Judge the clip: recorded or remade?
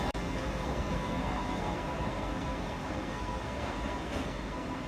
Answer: remade